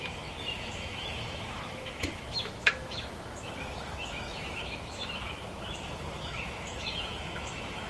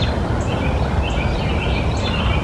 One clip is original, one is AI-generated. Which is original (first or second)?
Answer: second